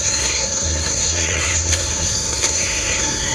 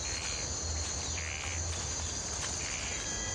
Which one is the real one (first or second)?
second